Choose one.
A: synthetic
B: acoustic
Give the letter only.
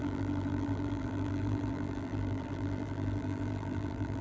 A